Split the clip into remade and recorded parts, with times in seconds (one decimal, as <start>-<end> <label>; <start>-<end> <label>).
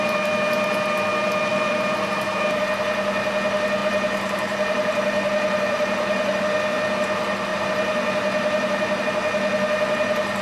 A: 0.0-1.5 recorded; 1.5-2.7 remade; 2.7-3.8 recorded; 3.8-6.4 remade; 6.4-7.5 recorded; 7.5-9.0 remade; 9.0-10.4 recorded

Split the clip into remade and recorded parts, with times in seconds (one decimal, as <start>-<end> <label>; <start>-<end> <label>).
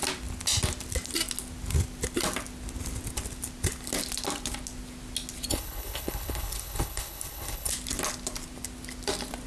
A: 0.0-5.5 recorded; 5.5-7.7 remade; 7.7-9.5 recorded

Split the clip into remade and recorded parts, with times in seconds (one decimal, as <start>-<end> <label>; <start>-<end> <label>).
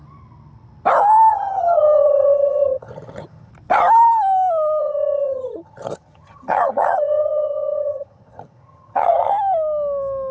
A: 0.0-1.3 recorded; 1.3-3.5 remade; 3.5-4.8 recorded; 4.8-9.3 remade; 9.3-10.3 recorded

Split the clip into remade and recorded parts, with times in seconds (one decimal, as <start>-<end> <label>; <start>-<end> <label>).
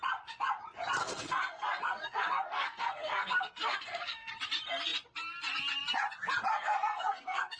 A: 0.0-1.0 recorded; 1.0-4.3 remade; 4.3-6.5 recorded; 6.5-7.6 remade